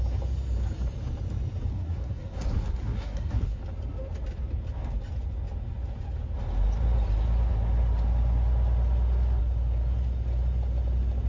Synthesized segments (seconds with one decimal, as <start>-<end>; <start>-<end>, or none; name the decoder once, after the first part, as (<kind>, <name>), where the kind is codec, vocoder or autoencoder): 1.7-3.6 (codec, SNAC)